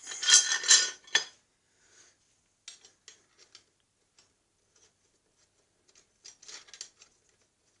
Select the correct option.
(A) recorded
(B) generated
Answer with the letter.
A